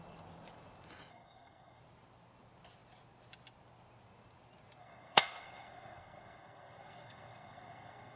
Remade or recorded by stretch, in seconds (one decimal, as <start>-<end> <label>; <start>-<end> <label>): 0.0-1.1 recorded; 1.1-1.8 remade; 1.8-4.8 recorded; 4.8-8.2 remade